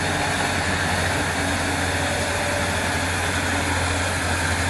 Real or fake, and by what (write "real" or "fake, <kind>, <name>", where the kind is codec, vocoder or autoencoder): real